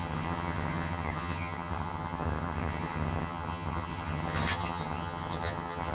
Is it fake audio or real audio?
fake